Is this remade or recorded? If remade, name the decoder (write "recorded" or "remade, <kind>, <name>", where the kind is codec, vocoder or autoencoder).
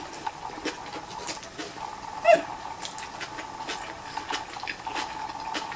recorded